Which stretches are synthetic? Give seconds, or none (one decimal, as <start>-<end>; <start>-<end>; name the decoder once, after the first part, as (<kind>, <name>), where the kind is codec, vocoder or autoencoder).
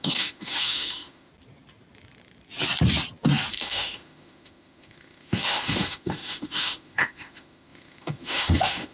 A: 0.0-1.3 (autoencoder, DAC-VAE); 3.5-8.9